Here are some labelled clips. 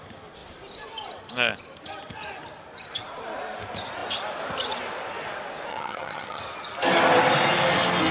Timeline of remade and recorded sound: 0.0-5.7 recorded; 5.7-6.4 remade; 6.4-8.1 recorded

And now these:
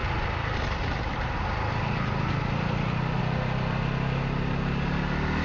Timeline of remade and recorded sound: 0.0-5.4 recorded

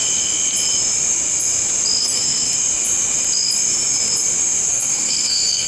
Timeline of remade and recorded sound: 0.0-2.0 recorded; 2.0-2.5 remade; 2.5-4.7 recorded; 4.7-5.7 remade

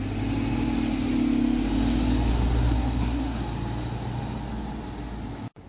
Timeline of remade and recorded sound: 0.0-2.3 recorded; 2.3-3.4 remade; 3.4-5.7 recorded